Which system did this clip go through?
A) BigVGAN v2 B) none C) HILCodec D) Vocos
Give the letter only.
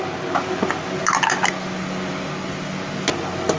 B